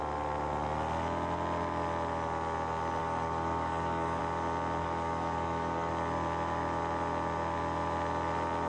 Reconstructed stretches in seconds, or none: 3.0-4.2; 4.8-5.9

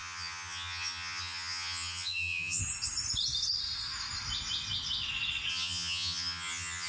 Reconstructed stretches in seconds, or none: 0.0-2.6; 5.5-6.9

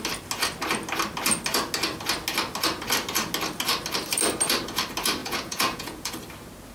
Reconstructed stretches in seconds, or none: 5.2-6.1

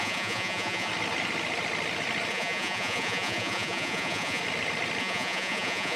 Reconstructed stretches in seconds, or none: 0.0-0.9; 2.3-4.4; 5.0-6.0

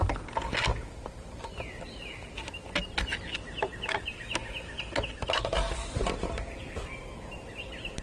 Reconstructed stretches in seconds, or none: none

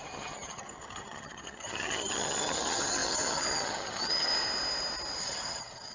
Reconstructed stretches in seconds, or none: 0.0-4.3; 5.2-5.9